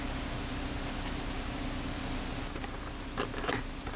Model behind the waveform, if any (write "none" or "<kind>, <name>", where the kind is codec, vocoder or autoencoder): none